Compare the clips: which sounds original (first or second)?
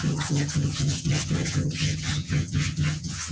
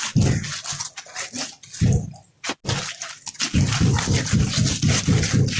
second